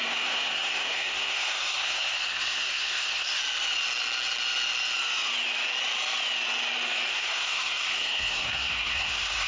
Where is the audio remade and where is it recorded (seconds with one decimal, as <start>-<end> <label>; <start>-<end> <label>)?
0.0-3.4 remade; 3.4-7.1 recorded; 7.1-9.5 remade